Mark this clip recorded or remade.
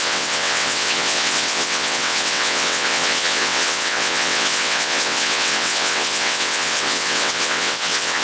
remade